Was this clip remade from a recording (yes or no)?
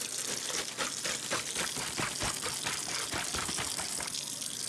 no